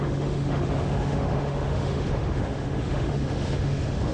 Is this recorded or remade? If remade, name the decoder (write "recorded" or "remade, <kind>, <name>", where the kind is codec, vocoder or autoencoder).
remade, autoencoder, DAC-VAE